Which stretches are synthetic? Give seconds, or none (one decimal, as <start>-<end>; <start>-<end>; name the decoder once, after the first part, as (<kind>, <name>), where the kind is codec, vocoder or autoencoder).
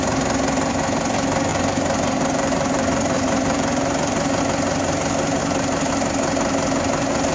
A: 1.5-4.4 (vocoder, BigVGAN v2); 5.4-5.9